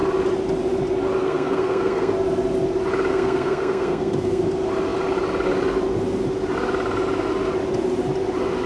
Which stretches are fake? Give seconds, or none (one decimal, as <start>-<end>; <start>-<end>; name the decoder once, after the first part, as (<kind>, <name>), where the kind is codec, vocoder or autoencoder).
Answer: 1.2-2.1 (codec, SNAC); 3.1-4.4